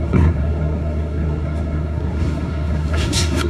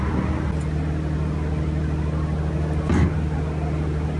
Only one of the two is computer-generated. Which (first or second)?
first